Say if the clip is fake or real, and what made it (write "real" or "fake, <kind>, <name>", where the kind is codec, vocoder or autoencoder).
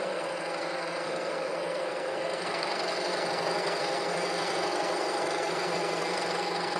fake, codec, SNAC